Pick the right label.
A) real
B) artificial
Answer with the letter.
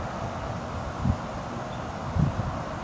A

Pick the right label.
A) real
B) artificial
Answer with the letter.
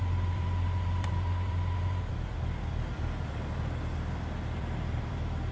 B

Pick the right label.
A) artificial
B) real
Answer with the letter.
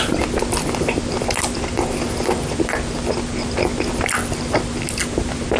B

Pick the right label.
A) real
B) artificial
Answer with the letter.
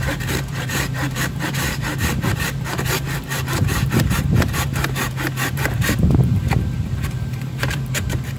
B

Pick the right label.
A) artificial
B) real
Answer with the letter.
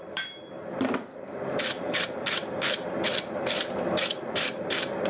A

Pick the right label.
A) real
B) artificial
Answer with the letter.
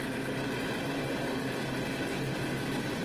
A